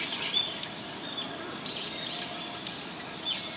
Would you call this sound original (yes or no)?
yes